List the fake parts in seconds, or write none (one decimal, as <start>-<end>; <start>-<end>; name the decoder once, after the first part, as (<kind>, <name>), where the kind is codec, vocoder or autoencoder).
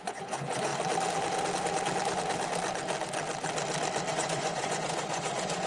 0.0-0.7 (vocoder, Vocos); 4.1-5.7